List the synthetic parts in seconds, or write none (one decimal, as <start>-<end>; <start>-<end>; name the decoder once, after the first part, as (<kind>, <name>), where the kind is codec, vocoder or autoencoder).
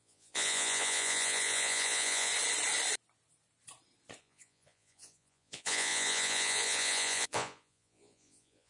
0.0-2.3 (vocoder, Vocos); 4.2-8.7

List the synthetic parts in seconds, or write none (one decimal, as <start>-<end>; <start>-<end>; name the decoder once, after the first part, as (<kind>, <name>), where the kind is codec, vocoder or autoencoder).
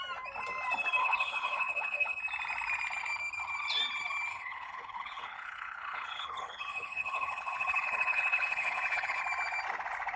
1.0-2.2 (codec, HILCodec); 4.3-9.2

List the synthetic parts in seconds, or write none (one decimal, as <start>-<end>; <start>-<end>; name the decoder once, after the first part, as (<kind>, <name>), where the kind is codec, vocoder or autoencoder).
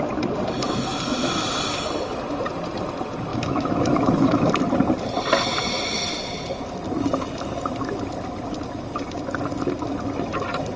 3.3-4.5 (autoencoder, DAC-VAE)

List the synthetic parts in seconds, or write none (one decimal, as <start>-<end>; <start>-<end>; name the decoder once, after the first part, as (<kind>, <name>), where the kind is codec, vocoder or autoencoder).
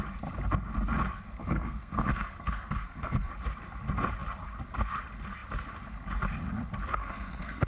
1.4-3.3 (codec, SNAC); 6.9-7.7